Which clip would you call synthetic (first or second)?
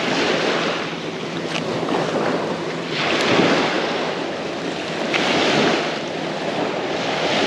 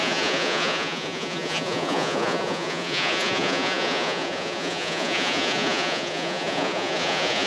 second